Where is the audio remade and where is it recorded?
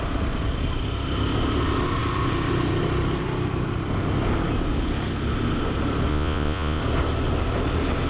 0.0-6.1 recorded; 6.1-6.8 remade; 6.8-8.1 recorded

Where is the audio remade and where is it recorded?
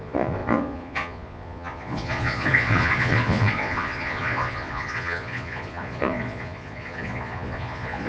0.0-8.1 remade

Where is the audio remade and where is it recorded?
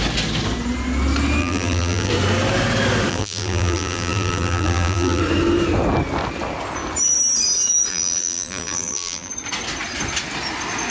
0.0-1.4 recorded; 1.4-2.1 remade; 2.1-3.1 recorded; 3.1-5.2 remade; 5.2-7.9 recorded; 7.9-9.3 remade; 9.3-10.9 recorded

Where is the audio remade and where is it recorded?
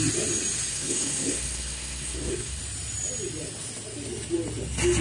0.0-0.7 recorded; 0.7-2.6 remade; 2.6-5.0 recorded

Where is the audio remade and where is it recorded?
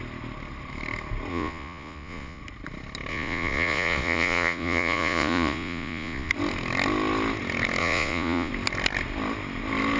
0.0-1.3 recorded; 1.3-2.4 remade; 2.4-3.1 recorded; 3.1-6.3 remade; 6.3-7.8 recorded; 7.8-8.5 remade; 8.5-10.0 recorded